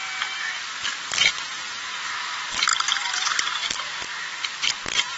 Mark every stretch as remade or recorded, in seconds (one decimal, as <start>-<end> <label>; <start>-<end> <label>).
0.0-5.2 recorded

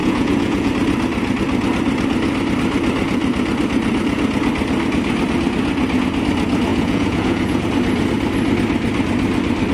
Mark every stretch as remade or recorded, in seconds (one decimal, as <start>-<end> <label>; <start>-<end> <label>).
0.0-0.7 remade; 0.7-6.7 recorded; 6.7-7.6 remade; 7.6-9.7 recorded

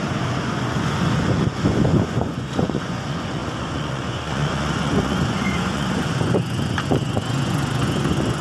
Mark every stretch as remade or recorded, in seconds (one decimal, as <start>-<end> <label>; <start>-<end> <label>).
0.0-8.4 remade

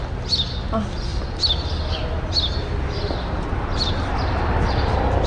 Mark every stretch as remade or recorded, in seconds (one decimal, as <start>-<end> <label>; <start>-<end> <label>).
0.0-1.1 recorded; 1.1-4.1 remade; 4.1-5.3 recorded